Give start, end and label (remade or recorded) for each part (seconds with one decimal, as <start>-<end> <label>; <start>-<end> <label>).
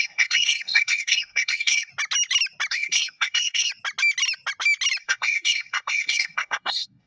0.0-1.9 remade; 1.9-2.7 recorded; 2.7-3.7 remade; 3.7-5.0 recorded; 5.0-7.1 remade